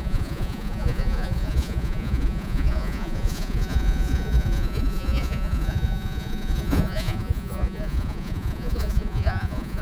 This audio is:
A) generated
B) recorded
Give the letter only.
A